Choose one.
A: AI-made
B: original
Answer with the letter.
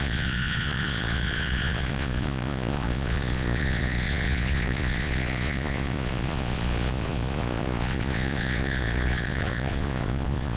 A